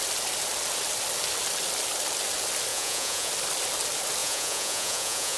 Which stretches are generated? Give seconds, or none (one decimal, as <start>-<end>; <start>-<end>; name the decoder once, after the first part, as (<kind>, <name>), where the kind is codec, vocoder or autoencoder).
2.7-3.3 (vocoder, Vocos); 4.2-5.4